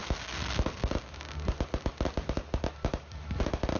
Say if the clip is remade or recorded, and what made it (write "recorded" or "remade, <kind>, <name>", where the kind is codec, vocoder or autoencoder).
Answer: recorded